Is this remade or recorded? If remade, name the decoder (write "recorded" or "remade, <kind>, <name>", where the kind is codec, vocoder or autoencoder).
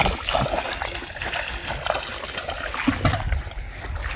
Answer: recorded